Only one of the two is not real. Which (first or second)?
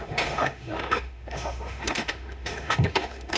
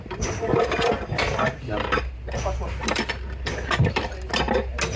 first